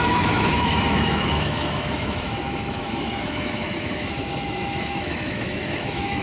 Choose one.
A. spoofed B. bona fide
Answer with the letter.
A